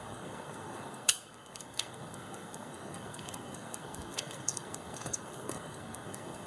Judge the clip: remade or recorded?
remade